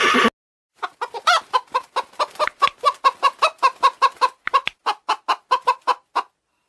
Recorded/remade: recorded